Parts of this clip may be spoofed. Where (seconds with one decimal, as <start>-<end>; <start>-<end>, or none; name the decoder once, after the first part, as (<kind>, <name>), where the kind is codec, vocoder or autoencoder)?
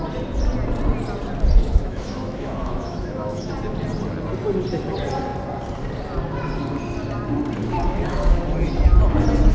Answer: 1.6-3.5 (autoencoder, DAC-VAE); 7.6-8.4